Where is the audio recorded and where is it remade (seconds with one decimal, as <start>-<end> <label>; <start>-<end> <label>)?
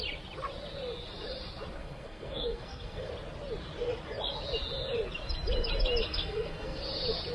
0.0-1.8 recorded; 1.8-3.1 remade; 3.1-6.0 recorded; 6.0-6.8 remade; 6.8-7.3 recorded